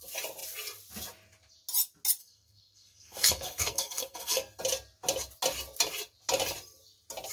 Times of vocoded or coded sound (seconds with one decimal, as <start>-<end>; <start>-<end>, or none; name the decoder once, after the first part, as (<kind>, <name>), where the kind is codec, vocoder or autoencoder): 2.2-4.6 (codec, SNAC)